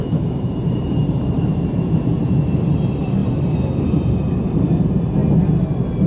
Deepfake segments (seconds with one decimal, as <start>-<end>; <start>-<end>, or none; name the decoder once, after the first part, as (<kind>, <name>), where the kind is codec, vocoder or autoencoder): 0.0-2.2 (vocoder, BigVGAN v2); 2.7-5.2

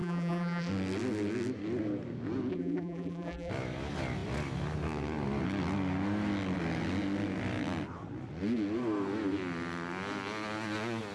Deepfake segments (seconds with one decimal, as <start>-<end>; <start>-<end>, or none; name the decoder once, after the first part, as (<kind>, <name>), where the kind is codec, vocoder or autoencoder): 0.0-0.7 (vocoder, BigVGAN v2); 2.5-3.5

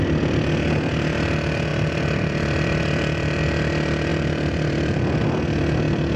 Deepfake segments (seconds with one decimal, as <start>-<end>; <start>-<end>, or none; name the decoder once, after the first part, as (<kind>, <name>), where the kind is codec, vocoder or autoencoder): 1.7-3.4 (vocoder, BigVGAN v2); 4.1-5.2

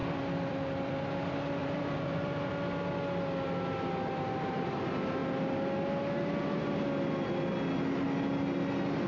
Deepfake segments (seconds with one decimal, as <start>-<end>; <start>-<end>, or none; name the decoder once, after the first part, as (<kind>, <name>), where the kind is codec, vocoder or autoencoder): 0.0-1.0 (vocoder, BigVGAN v2); 1.6-2.5